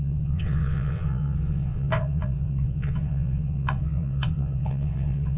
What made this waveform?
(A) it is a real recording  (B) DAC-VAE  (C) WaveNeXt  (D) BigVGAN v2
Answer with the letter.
C